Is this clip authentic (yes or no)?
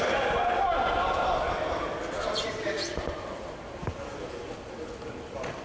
yes